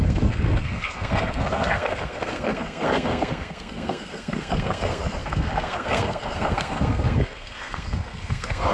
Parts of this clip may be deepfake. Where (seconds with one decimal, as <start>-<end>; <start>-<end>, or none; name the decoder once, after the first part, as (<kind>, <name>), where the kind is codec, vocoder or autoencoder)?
0.0-8.7 (codec, SNAC)